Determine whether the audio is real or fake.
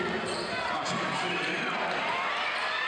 fake